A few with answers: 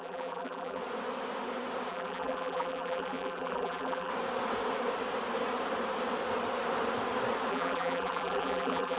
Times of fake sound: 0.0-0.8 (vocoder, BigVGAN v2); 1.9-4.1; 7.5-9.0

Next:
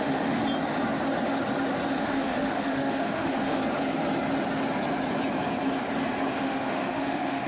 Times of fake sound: 0.0-0.4 (autoencoder, DAC-VAE); 2.0-3.6; 6.3-7.5

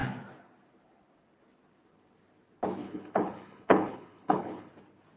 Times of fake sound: 2.8-4.7 (codec, HILCodec)

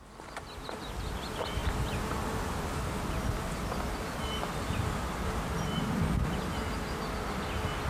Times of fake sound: none

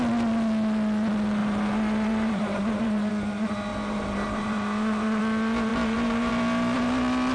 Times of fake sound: 1.4-3.1 (vocoder, BigVGAN v2); 3.7-5.2; 5.7-6.3

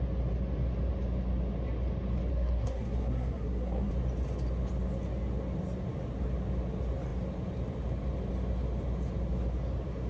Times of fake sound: 2.3-3.9 (codec, SNAC)